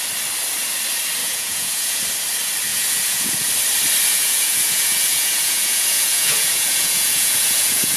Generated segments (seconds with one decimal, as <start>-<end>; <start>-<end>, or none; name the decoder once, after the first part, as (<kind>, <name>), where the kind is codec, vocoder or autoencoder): 1.2-2.0 (vocoder, Vocos); 2.7-3.5; 4.1-8.0